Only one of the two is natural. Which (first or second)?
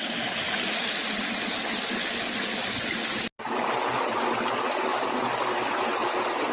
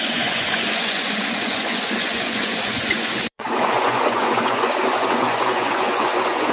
first